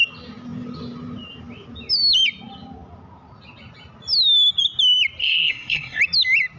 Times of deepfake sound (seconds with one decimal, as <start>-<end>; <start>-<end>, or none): 5.2-6.0